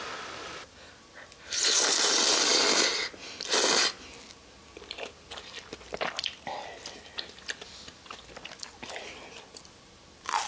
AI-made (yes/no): no